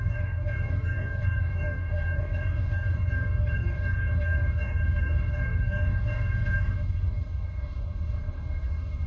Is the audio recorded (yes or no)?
no